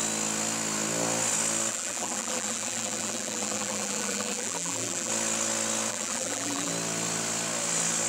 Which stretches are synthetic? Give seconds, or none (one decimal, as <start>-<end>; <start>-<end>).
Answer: 1.7-5.1; 5.9-6.7